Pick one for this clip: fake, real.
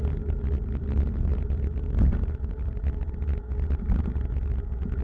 real